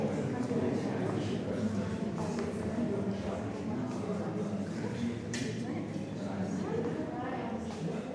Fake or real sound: fake